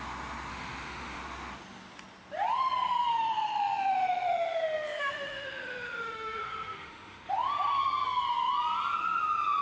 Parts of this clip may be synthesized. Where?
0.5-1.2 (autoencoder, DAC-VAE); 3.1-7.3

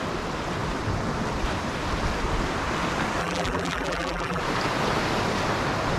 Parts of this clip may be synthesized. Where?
3.2-4.4 (vocoder, BigVGAN v2)

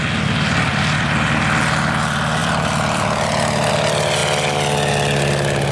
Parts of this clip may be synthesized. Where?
0.7-1.4 (vocoder, BigVGAN v2); 2.4-3.7

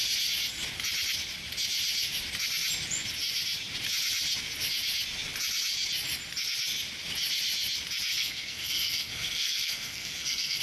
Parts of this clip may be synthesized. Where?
8.1-10.6 (codec, SNAC)

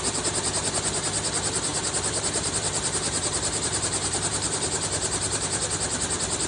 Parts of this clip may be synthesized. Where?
1.7-5.6 (vocoder, BigVGAN v2)

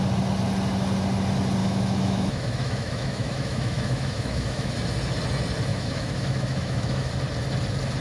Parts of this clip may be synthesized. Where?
1.6-4.7 (autoencoder, DAC-VAE); 5.7-7.1

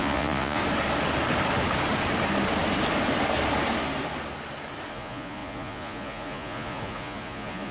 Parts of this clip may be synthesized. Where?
0.0-0.6 (vocoder, Vocos); 4.9-7.7